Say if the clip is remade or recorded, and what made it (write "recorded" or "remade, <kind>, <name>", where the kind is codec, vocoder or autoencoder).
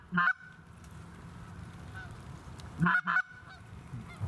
recorded